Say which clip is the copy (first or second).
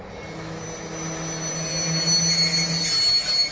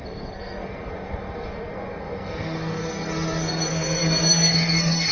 second